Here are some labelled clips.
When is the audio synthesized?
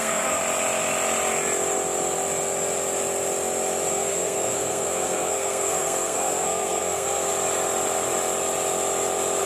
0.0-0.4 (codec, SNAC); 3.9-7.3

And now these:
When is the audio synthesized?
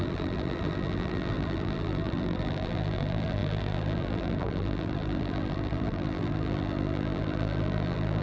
0.0-8.2 (vocoder, BigVGAN v2)